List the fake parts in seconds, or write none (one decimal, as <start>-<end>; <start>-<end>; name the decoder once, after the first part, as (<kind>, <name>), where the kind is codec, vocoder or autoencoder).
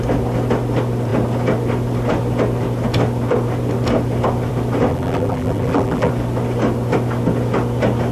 4.9-6.1 (vocoder, BigVGAN v2)